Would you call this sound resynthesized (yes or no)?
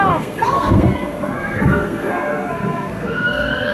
yes